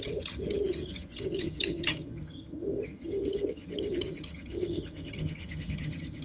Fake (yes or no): yes